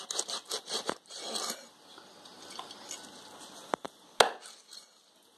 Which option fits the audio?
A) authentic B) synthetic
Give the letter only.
A